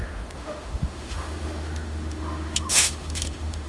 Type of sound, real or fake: fake